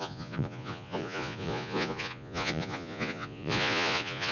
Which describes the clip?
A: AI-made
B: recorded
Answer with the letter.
A